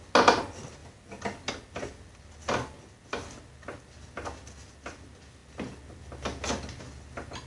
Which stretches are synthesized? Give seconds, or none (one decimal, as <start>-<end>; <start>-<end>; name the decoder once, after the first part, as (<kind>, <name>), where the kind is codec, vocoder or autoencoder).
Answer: none